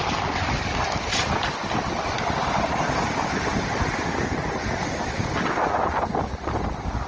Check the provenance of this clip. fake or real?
real